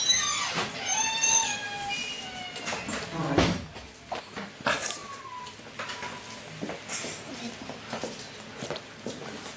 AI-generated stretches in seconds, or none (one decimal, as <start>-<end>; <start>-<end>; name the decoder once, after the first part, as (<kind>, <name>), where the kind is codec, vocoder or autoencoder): 0.0-1.6 (vocoder, BigVGAN v2); 4.2-5.0